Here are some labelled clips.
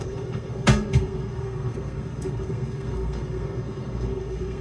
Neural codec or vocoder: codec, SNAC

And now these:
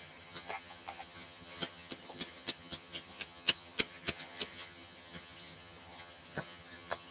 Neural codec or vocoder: vocoder, HiFi-GAN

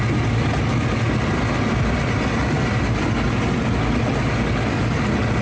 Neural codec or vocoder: none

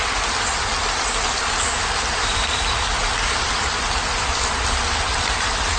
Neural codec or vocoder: none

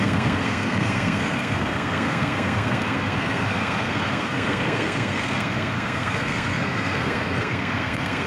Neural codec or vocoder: codec, SNAC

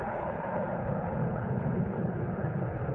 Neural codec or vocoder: codec, HILCodec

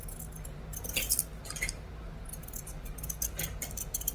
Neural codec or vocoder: none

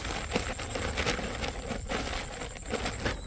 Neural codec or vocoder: none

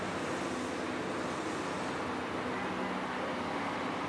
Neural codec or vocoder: none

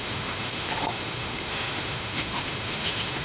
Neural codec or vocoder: autoencoder, DAC-VAE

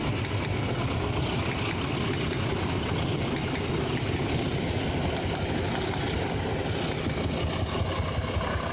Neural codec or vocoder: none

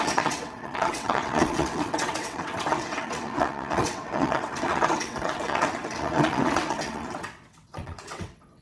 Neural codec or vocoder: vocoder, WaveNeXt